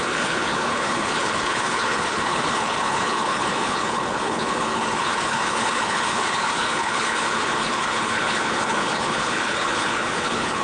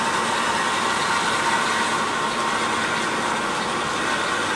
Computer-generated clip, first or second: first